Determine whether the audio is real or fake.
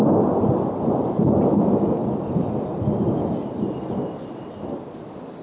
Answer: real